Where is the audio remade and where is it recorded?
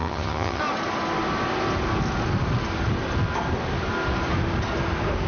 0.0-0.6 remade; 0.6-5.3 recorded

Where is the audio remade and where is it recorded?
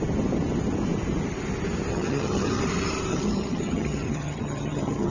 0.0-1.9 recorded; 1.9-2.6 remade; 2.6-3.1 recorded; 3.1-5.1 remade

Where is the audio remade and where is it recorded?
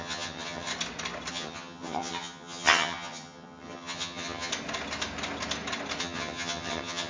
0.0-0.7 remade; 0.7-1.3 recorded; 1.3-4.5 remade; 4.5-6.0 recorded; 6.0-7.1 remade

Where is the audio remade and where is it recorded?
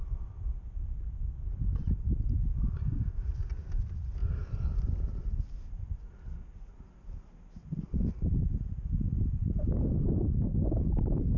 0.0-11.4 recorded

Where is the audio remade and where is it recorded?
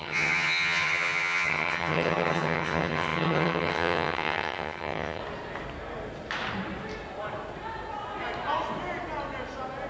0.0-5.2 remade; 5.2-9.9 recorded